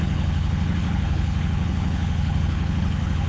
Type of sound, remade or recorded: remade